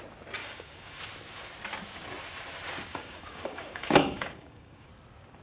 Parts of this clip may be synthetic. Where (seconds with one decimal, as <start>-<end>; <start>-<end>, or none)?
0.4-1.0; 2.9-4.9